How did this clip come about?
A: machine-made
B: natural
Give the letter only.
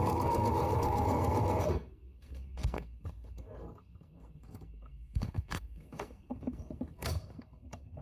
A